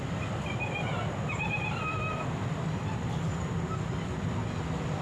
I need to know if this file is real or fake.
real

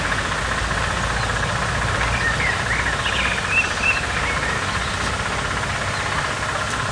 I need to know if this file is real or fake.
real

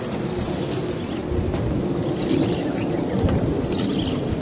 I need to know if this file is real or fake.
real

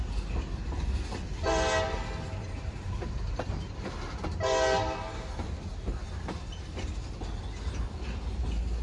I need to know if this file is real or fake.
real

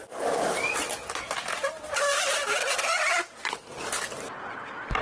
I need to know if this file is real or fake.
real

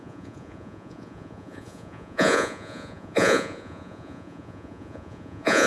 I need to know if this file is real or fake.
fake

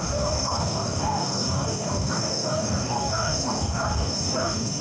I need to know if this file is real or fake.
fake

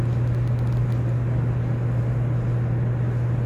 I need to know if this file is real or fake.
real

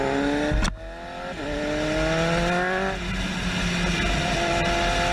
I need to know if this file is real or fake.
real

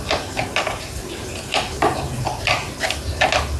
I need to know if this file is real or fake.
real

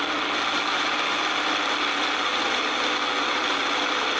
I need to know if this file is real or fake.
real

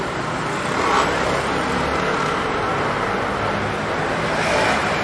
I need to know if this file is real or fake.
real